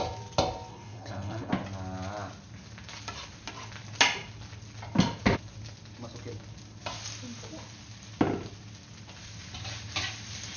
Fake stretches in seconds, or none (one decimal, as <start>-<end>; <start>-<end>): 0.7-1.5